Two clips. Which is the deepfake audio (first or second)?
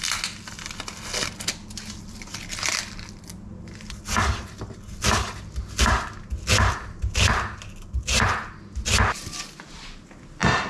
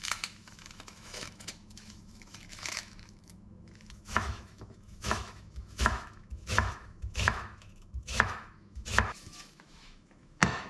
second